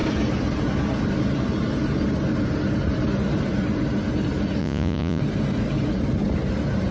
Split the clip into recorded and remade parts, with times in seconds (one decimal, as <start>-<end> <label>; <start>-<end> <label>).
0.0-4.6 recorded; 4.6-5.2 remade; 5.2-6.9 recorded